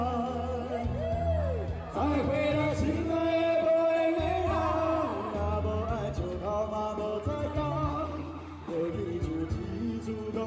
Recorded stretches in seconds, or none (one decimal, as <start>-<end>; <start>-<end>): 0.0-7.9; 8.9-10.5